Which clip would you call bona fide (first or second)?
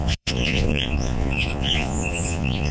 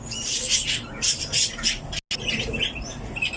second